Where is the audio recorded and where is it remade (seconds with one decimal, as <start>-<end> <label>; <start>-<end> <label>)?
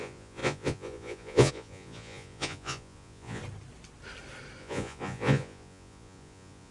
0.0-3.4 remade; 3.4-4.6 recorded; 4.6-6.7 remade